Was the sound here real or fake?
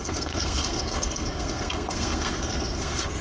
fake